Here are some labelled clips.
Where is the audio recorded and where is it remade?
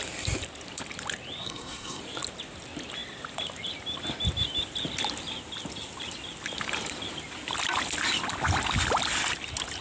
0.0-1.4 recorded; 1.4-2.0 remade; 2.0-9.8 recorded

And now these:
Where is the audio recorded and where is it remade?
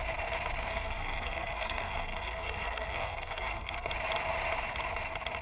0.0-0.7 recorded; 0.7-3.9 remade; 3.9-5.4 recorded